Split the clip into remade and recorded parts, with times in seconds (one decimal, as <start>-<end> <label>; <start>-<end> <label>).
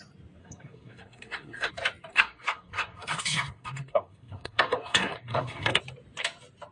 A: 0.0-0.4 recorded; 0.4-1.7 remade; 1.7-2.1 recorded; 2.1-5.8 remade; 5.8-6.7 recorded